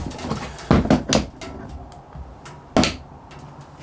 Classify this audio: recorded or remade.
recorded